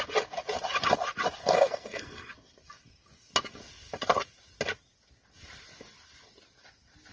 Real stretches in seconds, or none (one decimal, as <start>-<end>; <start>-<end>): 0.0-1.4; 2.3-7.1